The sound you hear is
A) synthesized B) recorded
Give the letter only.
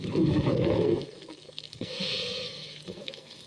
A